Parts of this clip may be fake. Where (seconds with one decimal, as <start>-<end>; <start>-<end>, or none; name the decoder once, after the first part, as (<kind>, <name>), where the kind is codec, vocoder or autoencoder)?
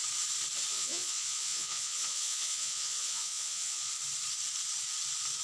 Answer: 0.7-3.9 (vocoder, Vocos)